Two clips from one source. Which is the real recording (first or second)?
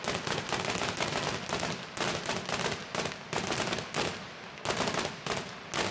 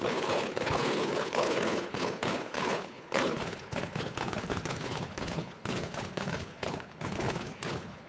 first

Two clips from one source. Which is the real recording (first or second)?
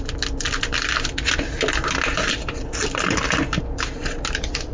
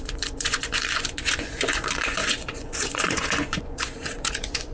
first